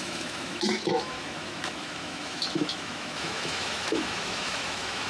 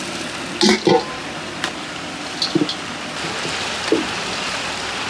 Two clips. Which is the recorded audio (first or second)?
second